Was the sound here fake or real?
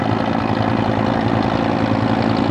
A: real